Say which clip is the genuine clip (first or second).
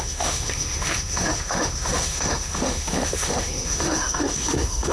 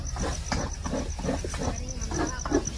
second